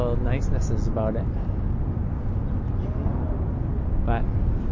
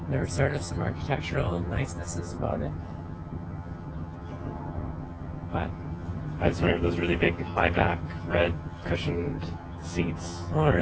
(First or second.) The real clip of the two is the first